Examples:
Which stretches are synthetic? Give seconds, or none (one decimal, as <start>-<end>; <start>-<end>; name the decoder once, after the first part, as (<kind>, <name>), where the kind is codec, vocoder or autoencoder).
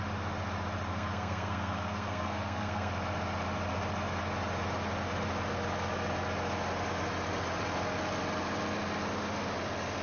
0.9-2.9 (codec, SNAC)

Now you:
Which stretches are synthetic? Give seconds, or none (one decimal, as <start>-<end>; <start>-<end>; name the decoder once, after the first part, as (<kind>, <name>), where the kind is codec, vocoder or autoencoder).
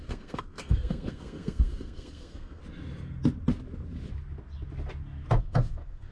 0.0-2.6 (codec, SNAC); 5.4-6.1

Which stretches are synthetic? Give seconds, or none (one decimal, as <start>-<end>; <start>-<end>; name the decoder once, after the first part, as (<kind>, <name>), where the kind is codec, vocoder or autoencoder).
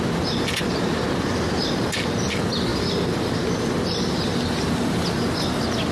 none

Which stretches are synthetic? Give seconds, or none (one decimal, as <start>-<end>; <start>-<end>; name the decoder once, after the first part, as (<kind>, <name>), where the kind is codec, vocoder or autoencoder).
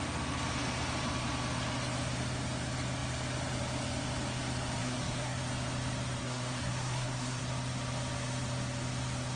4.8-5.4 (codec, SNAC); 6.2-7.4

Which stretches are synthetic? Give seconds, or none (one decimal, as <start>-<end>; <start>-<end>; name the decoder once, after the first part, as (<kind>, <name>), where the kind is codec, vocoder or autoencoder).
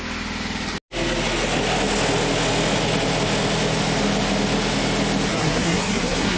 5.3-6.4 (codec, SNAC)